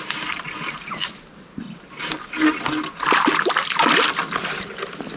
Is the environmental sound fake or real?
real